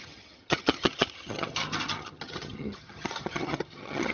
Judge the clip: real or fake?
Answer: fake